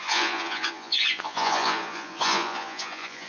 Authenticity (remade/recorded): remade